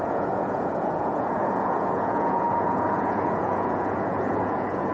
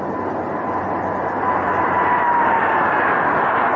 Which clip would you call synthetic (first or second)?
first